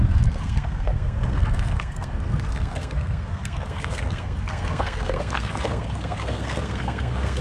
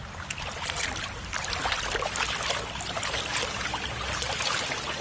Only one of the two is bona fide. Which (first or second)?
second